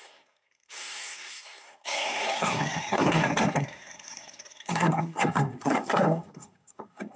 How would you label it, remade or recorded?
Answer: remade